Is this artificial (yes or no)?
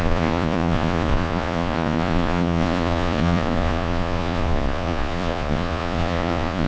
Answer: yes